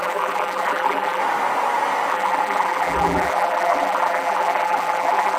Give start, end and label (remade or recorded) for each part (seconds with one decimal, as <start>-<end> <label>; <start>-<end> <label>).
0.0-1.2 remade; 1.2-2.1 recorded; 2.1-5.4 remade